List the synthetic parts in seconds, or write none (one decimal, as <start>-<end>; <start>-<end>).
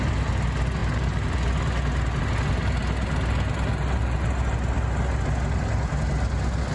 none